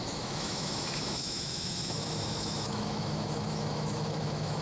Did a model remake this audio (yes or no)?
yes